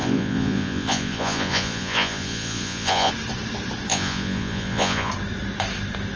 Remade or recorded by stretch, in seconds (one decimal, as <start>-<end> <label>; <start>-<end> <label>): 0.0-3.1 remade; 3.1-3.9 recorded; 3.9-5.1 remade; 5.1-6.2 recorded